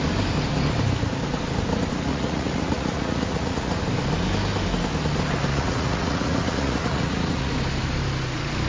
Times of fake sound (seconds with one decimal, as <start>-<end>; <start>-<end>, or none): 2.1-3.8; 5.5-7.5